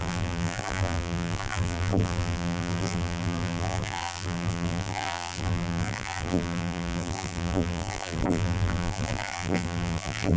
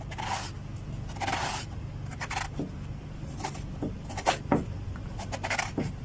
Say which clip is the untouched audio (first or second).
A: second